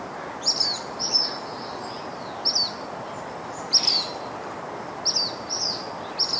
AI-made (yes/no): no